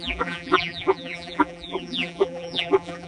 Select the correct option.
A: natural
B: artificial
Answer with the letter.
B